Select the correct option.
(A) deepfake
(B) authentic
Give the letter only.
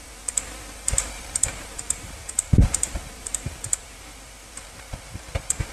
A